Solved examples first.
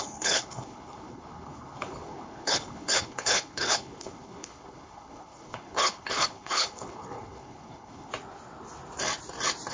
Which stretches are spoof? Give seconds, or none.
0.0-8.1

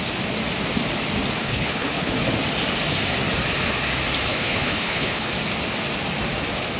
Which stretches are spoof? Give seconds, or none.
1.4-2.1; 4.3-5.3

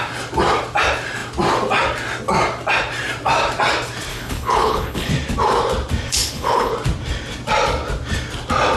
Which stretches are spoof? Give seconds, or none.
4.1-5.1; 6.1-6.7

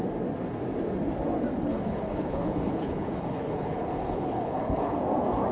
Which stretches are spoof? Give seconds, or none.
1.7-5.0

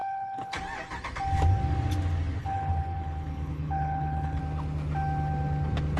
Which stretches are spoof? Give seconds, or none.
0.0-0.6; 2.4-4.4

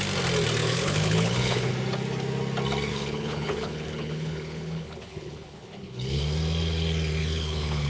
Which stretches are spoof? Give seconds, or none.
0.6-1.7; 2.9-6.2; 7.2-7.9

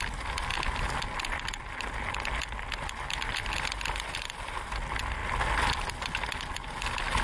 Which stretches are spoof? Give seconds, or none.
none